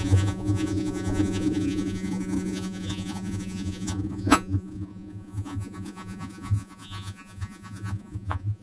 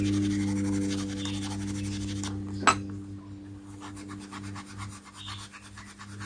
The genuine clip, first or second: second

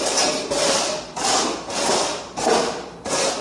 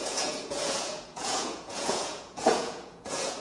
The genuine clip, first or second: first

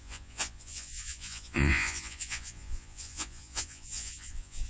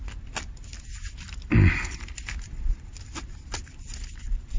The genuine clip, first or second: second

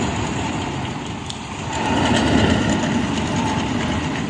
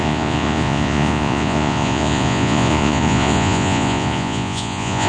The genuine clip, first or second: first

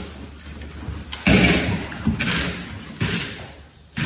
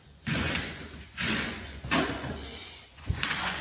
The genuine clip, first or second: first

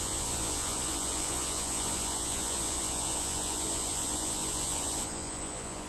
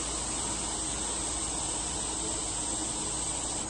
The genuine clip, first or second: second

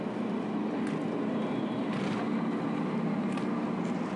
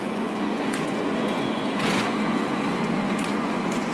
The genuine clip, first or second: first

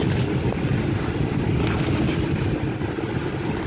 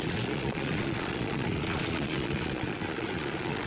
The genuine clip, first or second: first